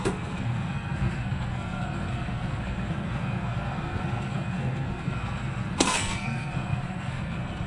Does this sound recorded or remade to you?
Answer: remade